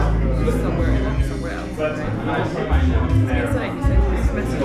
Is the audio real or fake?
real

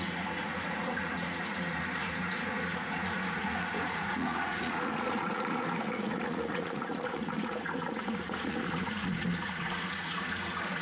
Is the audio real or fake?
fake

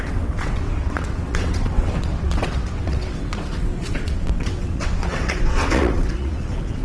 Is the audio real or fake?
fake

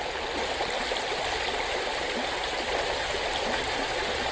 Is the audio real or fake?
real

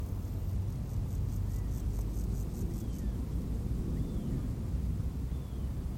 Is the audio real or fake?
real